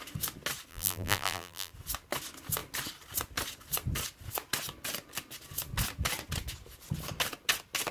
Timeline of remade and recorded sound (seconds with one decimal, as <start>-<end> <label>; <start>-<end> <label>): 0.0-0.7 recorded; 0.7-1.7 remade; 1.7-7.9 recorded